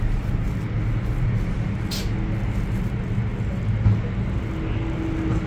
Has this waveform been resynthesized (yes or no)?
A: no